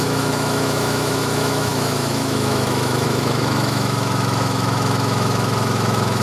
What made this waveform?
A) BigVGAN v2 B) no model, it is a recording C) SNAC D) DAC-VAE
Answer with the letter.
D